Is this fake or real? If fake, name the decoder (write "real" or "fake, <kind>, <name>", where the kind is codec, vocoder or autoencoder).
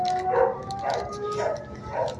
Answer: real